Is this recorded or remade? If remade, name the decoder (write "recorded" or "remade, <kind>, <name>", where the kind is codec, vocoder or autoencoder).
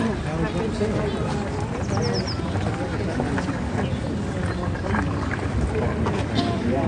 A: recorded